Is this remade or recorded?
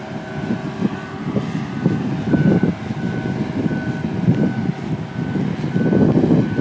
recorded